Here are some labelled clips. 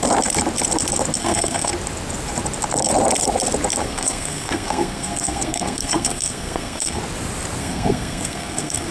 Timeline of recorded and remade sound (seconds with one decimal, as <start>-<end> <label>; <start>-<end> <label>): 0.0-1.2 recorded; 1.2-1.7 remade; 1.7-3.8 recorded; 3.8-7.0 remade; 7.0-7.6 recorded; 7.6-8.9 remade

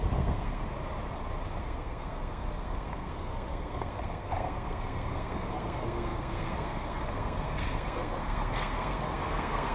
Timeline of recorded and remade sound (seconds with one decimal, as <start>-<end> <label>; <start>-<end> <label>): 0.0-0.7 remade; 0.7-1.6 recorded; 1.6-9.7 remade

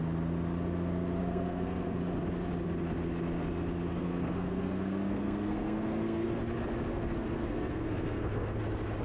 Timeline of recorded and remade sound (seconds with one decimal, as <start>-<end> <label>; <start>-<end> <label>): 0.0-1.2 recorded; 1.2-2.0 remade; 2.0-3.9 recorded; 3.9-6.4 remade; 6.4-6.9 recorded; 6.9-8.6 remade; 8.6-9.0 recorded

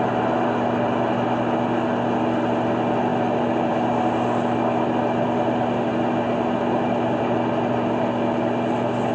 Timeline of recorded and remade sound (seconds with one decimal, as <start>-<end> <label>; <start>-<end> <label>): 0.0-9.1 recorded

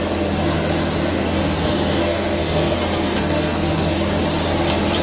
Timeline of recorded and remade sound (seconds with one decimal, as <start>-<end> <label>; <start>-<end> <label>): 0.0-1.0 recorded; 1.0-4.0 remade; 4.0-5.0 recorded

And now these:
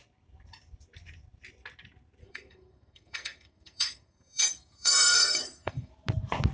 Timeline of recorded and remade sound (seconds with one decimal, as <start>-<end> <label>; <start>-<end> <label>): 0.0-2.2 recorded; 2.2-5.9 remade; 5.9-6.5 recorded

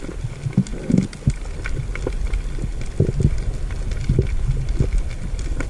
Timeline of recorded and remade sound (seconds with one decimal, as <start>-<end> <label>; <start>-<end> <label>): 0.0-5.7 recorded